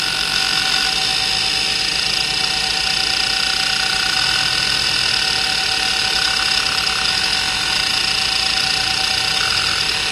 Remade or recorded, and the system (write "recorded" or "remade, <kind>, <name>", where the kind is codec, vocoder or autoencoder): recorded